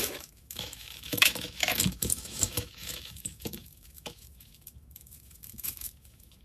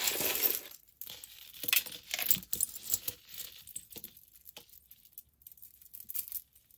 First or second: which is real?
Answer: second